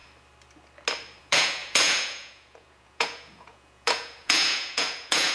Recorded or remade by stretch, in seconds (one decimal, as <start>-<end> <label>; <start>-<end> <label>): 0.0-1.2 recorded; 1.2-5.3 remade